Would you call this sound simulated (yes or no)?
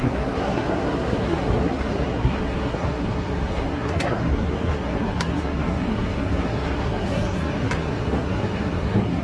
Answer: yes